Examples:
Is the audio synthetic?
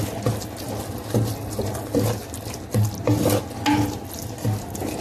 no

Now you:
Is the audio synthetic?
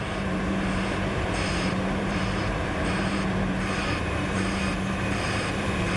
yes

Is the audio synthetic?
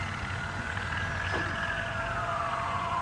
yes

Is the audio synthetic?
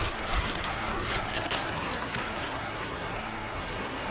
yes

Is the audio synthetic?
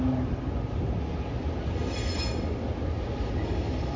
no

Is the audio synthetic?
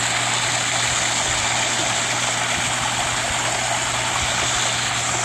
no